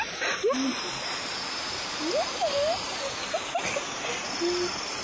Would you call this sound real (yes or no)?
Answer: yes